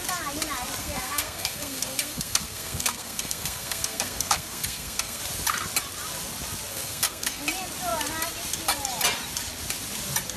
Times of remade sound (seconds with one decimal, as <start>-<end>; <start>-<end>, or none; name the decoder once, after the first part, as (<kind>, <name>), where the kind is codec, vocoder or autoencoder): 0.8-5.2 (codec, SNAC); 6.7-7.4